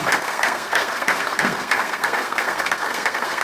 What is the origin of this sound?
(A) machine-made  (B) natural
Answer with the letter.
A